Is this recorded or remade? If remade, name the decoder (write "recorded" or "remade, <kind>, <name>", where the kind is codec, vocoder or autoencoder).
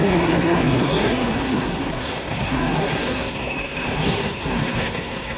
remade, codec, SNAC